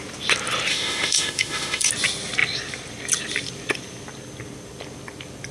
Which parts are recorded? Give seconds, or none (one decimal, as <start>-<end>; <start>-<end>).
0.0-0.7; 1.9-5.5